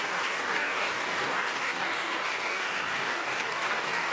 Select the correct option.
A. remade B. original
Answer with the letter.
A